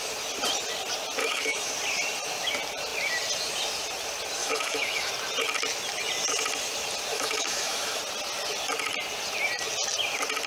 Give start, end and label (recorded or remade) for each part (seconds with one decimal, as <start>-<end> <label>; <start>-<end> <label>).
0.0-1.2 recorded; 1.2-1.7 remade; 1.7-4.4 recorded; 4.4-5.1 remade; 5.1-7.1 recorded; 7.1-8.0 remade; 8.0-10.5 recorded